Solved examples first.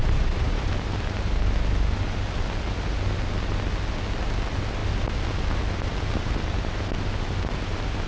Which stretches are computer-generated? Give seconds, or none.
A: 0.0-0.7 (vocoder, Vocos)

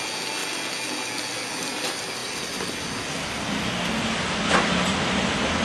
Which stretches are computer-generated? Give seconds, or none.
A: none